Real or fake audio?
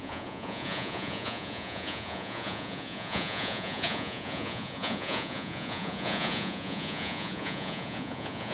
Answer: fake